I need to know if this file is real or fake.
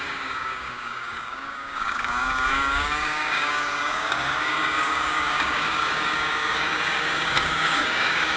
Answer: fake